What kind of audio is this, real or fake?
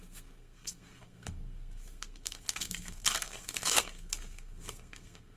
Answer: fake